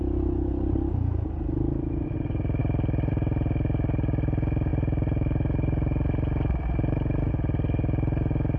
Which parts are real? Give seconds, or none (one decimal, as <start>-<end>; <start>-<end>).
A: 0.0-4.7; 7.3-8.6